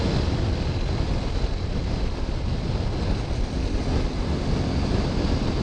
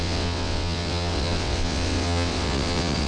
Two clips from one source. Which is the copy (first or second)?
second